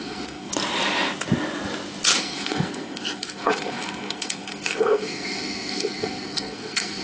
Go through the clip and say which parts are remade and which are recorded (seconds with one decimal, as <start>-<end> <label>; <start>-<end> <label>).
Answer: 0.0-0.5 remade; 0.5-2.2 recorded; 2.2-7.0 remade